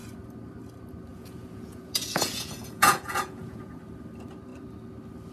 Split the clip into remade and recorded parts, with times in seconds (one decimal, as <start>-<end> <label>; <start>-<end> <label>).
0.0-1.1 recorded; 1.1-3.8 remade; 3.8-5.3 recorded